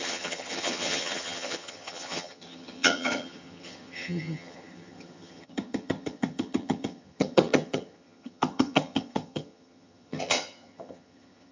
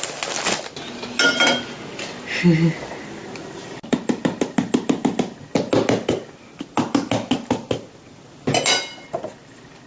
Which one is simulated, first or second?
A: first